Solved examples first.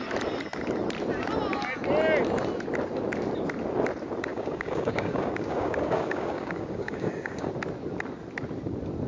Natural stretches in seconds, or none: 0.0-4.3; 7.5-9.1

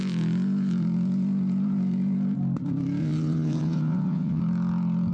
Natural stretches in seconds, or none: 0.0-3.0; 4.4-5.1

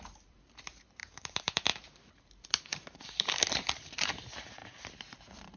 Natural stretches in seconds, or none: none

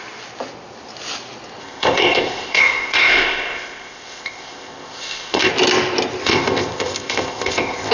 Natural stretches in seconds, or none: 0.0-1.6; 5.5-6.2

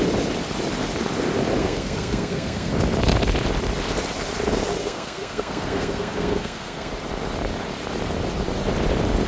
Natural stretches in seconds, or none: 0.0-1.6; 2.7-4.8; 6.9-9.3